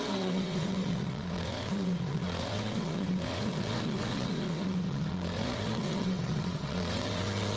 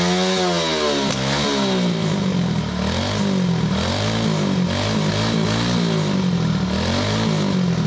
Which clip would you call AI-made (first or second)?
first